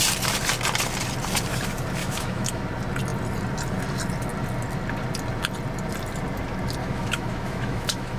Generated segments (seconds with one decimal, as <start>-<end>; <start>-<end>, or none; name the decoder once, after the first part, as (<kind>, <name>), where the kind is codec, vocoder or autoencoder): 2.0-2.6 (autoencoder, DAC-VAE); 6.8-8.2